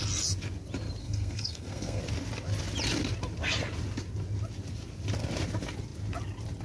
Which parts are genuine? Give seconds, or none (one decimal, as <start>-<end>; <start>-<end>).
0.0-1.0; 2.0-6.6